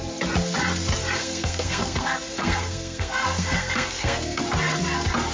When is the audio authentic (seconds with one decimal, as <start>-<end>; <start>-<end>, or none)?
0.0-1.2; 4.4-5.3